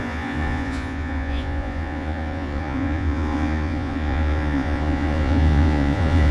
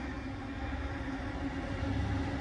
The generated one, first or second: first